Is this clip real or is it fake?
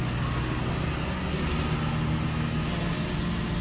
real